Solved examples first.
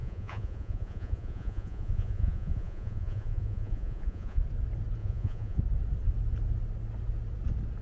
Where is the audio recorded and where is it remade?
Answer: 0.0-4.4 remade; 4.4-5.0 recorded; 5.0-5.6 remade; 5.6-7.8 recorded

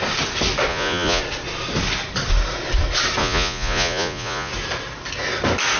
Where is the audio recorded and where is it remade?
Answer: 0.0-0.7 recorded; 0.7-1.2 remade; 1.2-3.2 recorded; 3.2-4.5 remade; 4.5-5.8 recorded

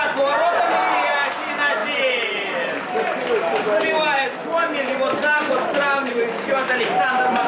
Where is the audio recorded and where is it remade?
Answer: 0.0-7.5 recorded